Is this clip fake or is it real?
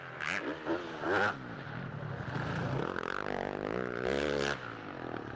real